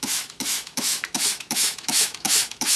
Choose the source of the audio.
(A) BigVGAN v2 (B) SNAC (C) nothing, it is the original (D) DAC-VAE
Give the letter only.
D